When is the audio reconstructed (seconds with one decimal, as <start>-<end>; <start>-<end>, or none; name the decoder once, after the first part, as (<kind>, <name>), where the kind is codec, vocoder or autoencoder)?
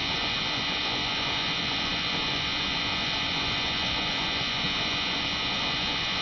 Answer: 0.0-6.2 (vocoder, Vocos)